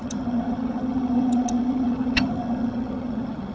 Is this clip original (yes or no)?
no